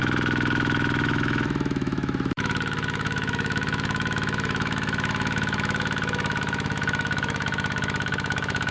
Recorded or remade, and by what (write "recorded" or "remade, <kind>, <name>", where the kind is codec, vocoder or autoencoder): remade, autoencoder, DAC-VAE